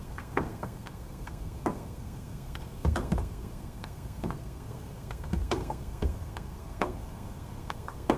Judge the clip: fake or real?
fake